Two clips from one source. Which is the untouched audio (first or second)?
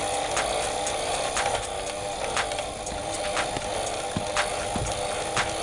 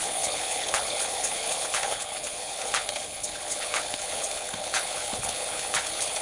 first